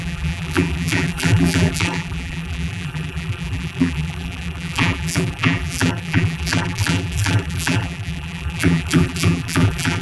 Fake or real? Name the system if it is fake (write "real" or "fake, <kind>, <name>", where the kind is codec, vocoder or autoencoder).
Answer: fake, vocoder, BigVGAN v2